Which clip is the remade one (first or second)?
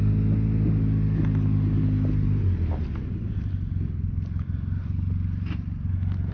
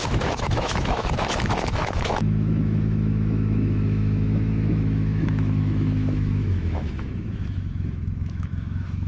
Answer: second